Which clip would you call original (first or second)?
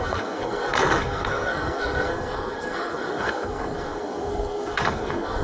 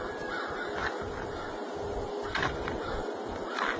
second